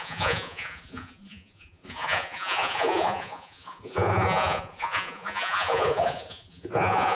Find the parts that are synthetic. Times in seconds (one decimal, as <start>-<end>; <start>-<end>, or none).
0.0-7.1